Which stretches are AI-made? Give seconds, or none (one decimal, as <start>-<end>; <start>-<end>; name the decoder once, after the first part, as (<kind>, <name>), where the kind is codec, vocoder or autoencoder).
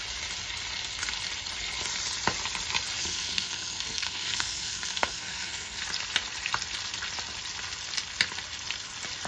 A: 3.0-5.8 (codec, SNAC)